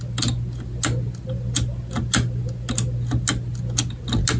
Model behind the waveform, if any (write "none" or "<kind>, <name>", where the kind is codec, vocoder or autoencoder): none